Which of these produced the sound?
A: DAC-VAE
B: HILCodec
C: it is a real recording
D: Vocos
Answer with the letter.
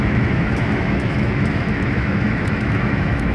A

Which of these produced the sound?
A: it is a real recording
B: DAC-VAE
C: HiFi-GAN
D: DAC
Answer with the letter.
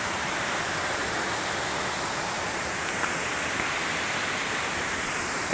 A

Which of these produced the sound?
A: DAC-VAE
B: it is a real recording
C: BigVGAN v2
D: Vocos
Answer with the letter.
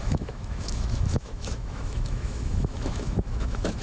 A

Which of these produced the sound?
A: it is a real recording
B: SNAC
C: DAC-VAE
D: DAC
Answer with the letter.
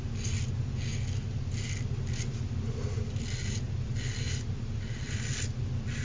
A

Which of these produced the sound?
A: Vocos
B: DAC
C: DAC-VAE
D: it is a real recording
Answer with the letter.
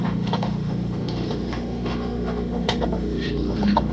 C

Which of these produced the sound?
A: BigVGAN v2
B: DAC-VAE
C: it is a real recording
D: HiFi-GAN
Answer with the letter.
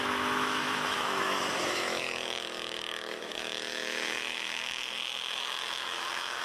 B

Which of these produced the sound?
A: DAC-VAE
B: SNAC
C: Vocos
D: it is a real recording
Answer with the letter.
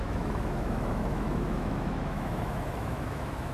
A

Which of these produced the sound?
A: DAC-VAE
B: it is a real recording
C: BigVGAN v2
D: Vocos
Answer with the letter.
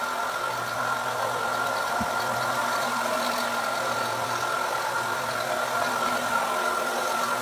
B